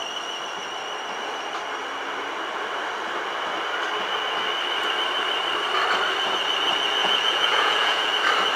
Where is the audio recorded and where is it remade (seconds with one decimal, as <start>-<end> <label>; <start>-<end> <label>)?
0.0-7.0 recorded; 7.0-8.1 remade; 8.1-8.6 recorded